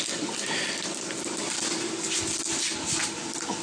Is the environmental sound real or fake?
real